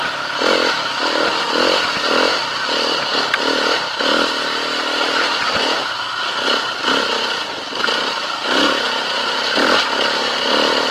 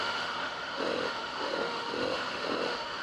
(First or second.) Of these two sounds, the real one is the first